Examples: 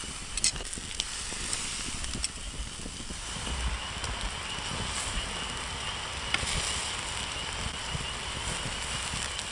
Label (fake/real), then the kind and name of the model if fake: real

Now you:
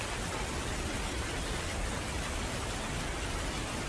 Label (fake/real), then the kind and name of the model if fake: real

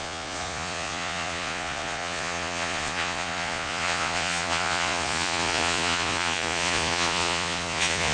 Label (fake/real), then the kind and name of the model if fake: fake, vocoder, Vocos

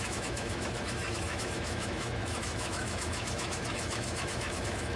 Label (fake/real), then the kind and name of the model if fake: fake, autoencoder, DAC-VAE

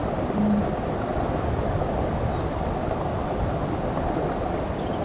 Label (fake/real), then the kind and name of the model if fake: real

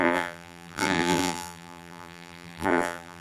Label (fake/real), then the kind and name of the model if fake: fake, vocoder, BigVGAN v2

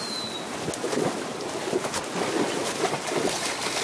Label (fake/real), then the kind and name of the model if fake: real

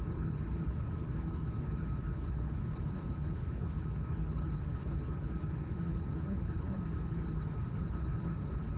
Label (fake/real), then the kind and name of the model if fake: fake, codec, HILCodec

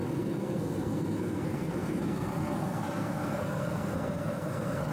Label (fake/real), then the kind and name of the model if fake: fake, codec, SNAC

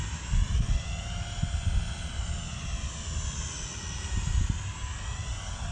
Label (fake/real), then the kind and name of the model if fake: real